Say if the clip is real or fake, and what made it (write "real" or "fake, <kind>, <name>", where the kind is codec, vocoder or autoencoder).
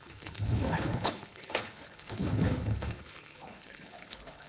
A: fake, codec, HILCodec